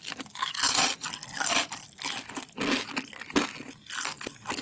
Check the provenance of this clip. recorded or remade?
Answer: recorded